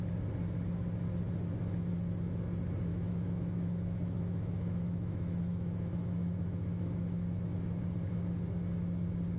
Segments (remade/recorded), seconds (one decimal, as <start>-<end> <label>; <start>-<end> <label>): 0.0-2.9 recorded; 2.9-7.8 remade; 7.8-9.4 recorded